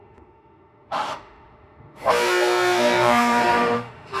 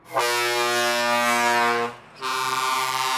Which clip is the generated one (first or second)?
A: first